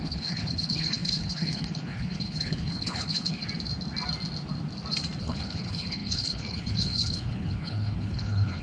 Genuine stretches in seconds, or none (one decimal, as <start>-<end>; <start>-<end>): 3.4-5.2